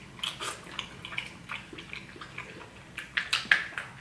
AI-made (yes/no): no